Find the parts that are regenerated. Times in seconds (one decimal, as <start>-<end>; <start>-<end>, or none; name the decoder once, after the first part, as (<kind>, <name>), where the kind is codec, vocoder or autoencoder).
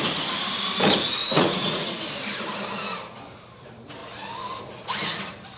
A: 1.2-1.9 (vocoder, Vocos)